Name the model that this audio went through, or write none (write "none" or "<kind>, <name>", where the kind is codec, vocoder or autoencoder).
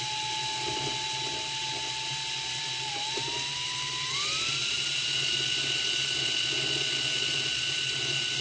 none